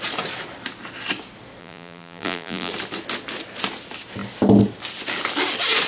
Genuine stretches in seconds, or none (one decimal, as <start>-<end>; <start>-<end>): 0.0-1.6; 2.7-5.9